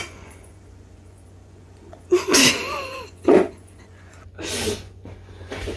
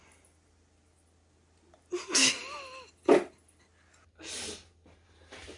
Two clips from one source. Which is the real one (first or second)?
second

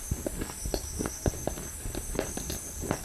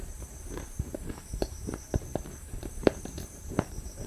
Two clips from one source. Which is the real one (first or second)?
first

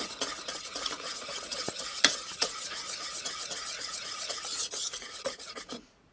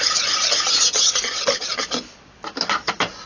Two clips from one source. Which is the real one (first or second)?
second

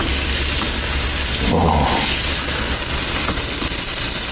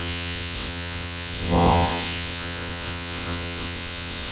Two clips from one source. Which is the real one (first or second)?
first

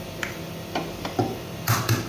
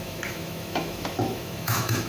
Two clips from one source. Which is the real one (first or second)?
first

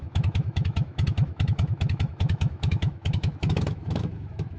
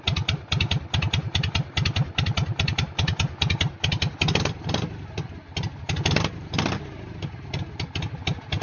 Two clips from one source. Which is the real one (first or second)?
second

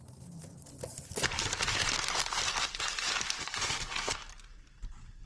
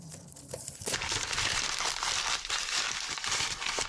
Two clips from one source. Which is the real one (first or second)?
first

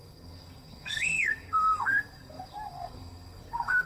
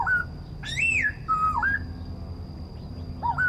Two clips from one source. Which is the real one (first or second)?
second